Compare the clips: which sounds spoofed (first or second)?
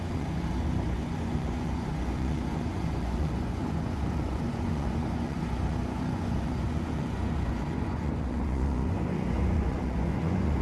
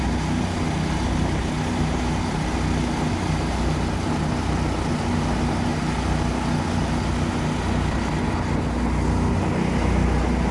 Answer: first